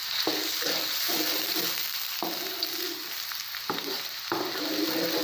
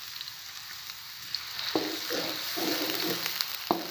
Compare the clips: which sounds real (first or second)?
first